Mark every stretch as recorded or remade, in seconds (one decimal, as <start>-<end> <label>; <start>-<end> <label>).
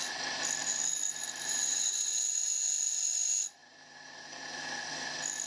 0.0-1.6 recorded; 1.6-2.3 remade; 2.3-5.5 recorded